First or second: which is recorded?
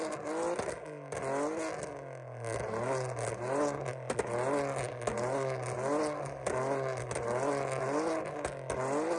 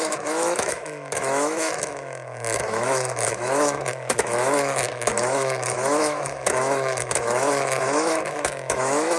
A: first